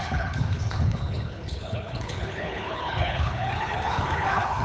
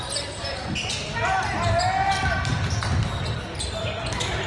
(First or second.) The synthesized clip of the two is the first